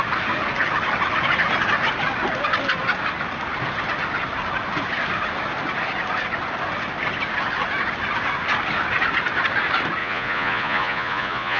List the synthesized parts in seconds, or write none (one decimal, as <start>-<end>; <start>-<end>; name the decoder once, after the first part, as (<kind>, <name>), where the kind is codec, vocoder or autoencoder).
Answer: 10.0-11.6 (vocoder, Vocos)